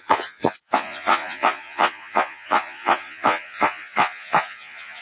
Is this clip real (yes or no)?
no